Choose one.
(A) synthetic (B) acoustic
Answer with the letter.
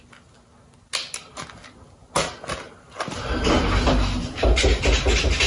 B